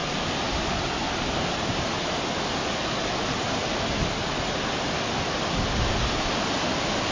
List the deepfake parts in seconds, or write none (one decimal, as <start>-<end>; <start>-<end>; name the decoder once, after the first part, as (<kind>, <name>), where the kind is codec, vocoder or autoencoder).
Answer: none